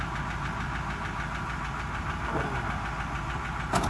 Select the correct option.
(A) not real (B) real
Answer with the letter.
B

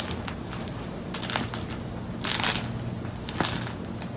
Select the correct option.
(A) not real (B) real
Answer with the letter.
B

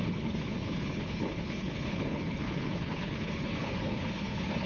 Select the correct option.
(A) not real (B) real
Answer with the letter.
A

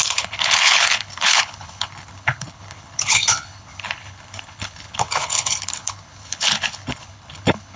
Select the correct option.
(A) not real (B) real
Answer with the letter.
A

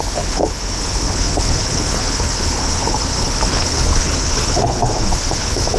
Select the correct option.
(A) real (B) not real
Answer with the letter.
B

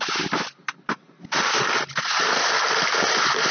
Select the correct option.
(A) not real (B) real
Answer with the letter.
B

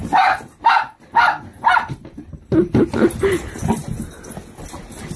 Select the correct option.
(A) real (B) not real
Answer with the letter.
A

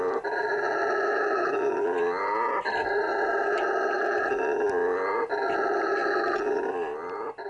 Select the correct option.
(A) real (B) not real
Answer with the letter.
A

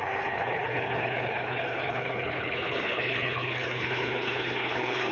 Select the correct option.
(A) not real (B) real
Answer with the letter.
A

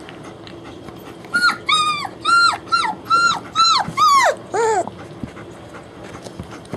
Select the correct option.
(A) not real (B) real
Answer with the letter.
B